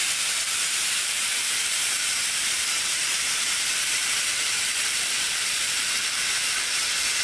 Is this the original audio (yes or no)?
no